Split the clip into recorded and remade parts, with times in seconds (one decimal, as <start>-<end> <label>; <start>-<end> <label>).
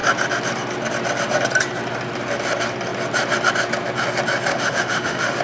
0.0-4.5 recorded; 4.5-5.4 remade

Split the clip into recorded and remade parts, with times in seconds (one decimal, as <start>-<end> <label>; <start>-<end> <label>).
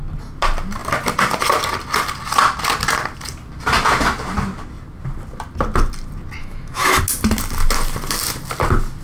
0.0-6.4 recorded; 6.4-7.0 remade; 7.0-9.0 recorded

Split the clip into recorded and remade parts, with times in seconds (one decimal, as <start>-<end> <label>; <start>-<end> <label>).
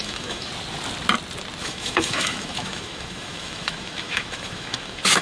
0.0-0.5 remade; 0.5-1.6 recorded; 1.6-5.2 remade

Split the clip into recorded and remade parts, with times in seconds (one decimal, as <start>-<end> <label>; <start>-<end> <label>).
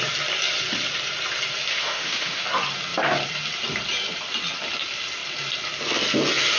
0.0-1.7 recorded; 1.7-2.4 remade; 2.4-6.6 recorded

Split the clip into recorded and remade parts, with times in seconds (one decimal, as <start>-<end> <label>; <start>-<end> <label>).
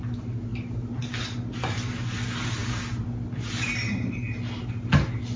0.0-5.4 recorded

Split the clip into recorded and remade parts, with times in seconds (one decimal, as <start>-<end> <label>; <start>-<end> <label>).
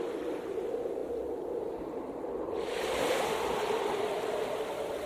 0.0-5.1 recorded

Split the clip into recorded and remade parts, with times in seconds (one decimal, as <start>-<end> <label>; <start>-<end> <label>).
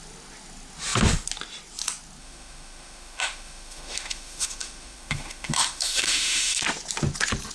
0.0-2.2 recorded; 2.2-6.6 remade; 6.6-7.5 recorded